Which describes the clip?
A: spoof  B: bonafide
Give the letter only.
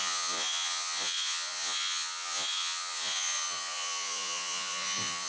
A